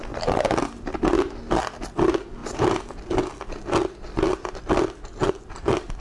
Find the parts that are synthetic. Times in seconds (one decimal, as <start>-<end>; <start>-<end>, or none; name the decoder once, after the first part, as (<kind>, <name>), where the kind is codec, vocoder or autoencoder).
2.4-3.0 (vocoder, BigVGAN v2)